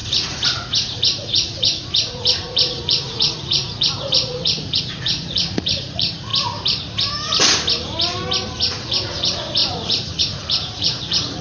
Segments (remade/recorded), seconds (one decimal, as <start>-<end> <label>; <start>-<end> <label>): 0.0-6.3 remade; 6.3-8.6 recorded; 8.6-11.4 remade